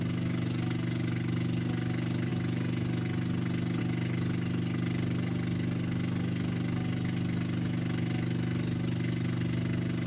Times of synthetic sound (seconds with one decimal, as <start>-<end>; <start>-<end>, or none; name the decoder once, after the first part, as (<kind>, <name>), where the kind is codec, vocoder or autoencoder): none